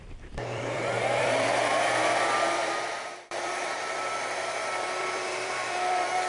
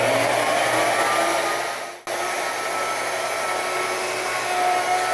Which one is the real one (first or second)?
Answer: second